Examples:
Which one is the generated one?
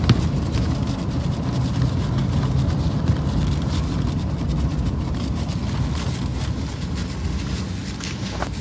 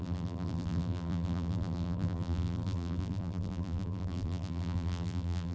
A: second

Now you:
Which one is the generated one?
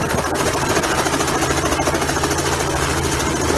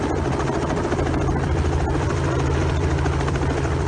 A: second